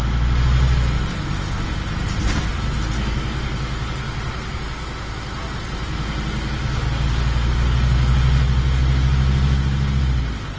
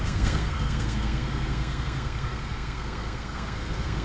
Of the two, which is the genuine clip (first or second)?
first